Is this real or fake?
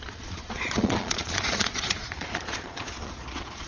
fake